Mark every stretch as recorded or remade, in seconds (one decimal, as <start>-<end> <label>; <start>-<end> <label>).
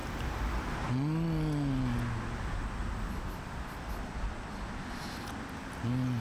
0.0-6.2 recorded